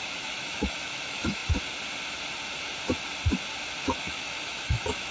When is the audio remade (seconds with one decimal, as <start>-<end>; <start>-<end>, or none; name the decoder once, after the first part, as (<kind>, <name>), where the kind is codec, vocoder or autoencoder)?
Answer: 0.0-1.4 (autoencoder, DAC-VAE); 3.8-5.1